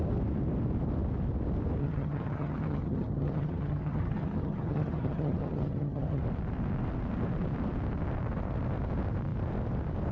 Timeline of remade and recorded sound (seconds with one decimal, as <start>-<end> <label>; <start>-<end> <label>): 0.0-1.8 recorded; 1.8-6.2 remade; 6.2-10.1 recorded